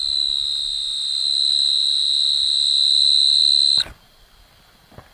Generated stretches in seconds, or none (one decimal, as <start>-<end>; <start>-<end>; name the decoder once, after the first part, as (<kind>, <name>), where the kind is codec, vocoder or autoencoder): 1.2-3.4 (vocoder, BigVGAN v2)